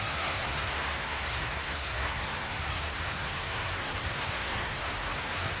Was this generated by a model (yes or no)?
yes